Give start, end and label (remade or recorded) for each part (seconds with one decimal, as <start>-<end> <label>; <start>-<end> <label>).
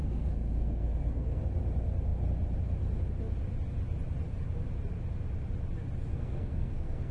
0.0-1.4 remade; 1.4-6.1 recorded; 6.1-7.1 remade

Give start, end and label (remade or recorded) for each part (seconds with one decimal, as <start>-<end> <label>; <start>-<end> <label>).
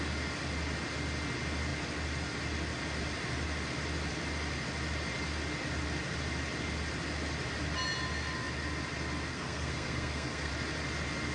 0.0-9.3 recorded; 9.3-10.5 remade; 10.5-11.3 recorded